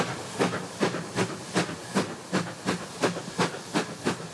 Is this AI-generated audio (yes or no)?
no